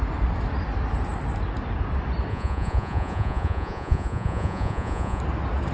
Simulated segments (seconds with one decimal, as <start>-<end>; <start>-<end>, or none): 2.3-5.2